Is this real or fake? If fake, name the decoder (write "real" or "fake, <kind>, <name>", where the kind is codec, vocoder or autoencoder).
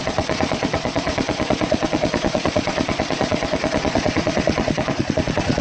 fake, vocoder, Vocos